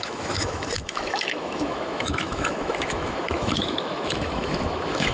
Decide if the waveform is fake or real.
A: fake